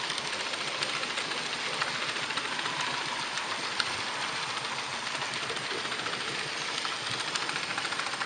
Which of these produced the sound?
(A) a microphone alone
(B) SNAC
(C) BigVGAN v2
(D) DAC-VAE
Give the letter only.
A